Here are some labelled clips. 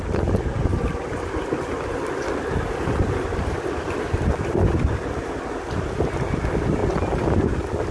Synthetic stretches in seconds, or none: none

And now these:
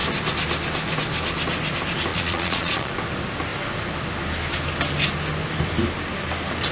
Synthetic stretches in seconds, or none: 2.1-2.9 (vocoder, Vocos)

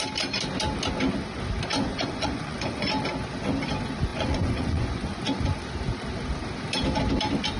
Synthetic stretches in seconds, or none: 1.7-2.9 (vocoder, Vocos); 4.1-5.2